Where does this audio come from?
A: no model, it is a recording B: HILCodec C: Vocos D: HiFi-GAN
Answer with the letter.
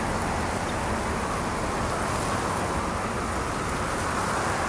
A